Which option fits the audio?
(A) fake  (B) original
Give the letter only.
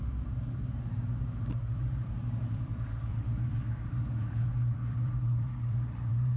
A